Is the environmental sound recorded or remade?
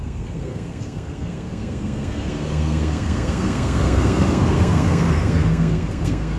remade